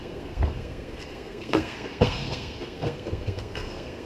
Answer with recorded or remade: remade